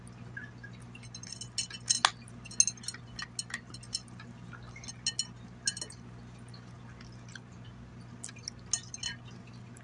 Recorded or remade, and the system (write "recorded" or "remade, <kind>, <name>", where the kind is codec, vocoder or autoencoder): recorded